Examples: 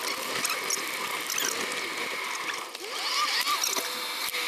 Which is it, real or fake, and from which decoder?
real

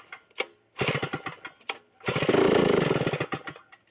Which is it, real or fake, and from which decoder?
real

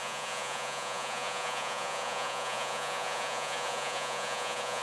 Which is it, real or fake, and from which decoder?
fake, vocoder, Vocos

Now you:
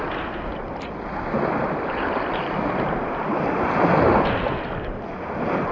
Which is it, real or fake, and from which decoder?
real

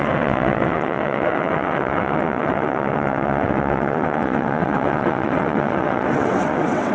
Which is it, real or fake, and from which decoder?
fake, vocoder, WaveNeXt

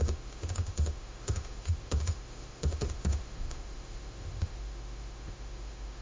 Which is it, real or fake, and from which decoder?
fake, autoencoder, DAC-VAE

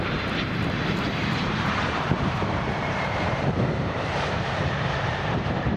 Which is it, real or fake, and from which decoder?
fake, vocoder, BigVGAN v2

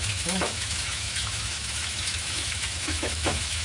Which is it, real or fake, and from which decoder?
fake, autoencoder, DAC-VAE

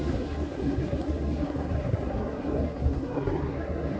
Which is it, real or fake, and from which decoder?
fake, codec, SNAC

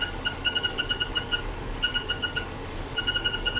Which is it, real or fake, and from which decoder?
fake, codec, DAC